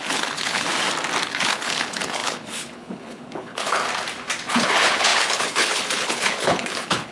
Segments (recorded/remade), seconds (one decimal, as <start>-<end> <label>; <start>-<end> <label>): 0.0-0.7 remade; 0.7-1.3 recorded; 1.3-3.8 remade; 3.8-4.5 recorded; 4.5-7.1 remade

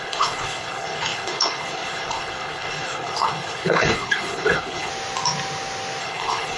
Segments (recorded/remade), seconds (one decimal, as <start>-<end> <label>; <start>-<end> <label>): 0.0-4.9 remade; 4.9-6.0 recorded; 6.0-6.6 remade

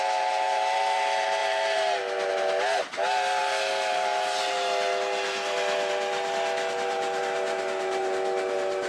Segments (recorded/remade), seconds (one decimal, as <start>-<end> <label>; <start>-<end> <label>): 0.0-8.9 recorded

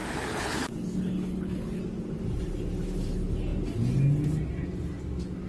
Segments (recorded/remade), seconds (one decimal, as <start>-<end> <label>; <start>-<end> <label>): 0.0-1.8 remade; 1.8-5.5 recorded

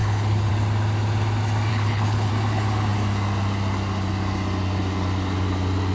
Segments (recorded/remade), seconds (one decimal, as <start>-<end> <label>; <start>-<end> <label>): 0.0-0.5 remade; 0.5-1.7 recorded; 1.7-2.3 remade; 2.3-5.9 recorded

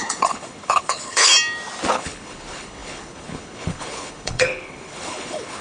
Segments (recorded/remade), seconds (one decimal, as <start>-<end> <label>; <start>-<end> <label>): 0.0-1.3 remade; 1.3-1.9 recorded; 1.9-5.6 remade

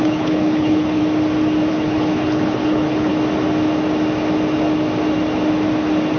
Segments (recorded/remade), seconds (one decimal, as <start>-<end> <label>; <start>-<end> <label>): 0.0-1.0 remade; 1.0-1.7 recorded; 1.7-3.1 remade; 3.1-6.2 recorded